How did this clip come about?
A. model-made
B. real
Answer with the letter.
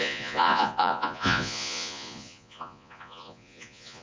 A